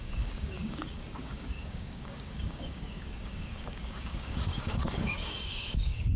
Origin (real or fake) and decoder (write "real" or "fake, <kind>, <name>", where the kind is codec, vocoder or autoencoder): fake, codec, DAC